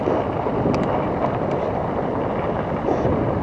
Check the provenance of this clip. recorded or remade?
recorded